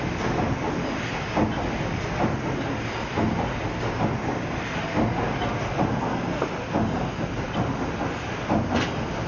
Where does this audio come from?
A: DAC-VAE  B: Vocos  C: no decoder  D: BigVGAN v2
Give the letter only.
C